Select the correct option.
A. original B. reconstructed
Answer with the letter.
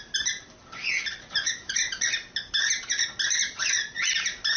A